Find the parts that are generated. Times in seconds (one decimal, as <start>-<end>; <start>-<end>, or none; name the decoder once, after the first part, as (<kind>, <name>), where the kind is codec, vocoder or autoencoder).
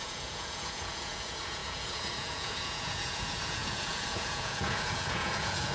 0.0-5.7 (vocoder, Vocos)